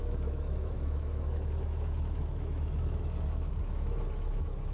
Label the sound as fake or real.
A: fake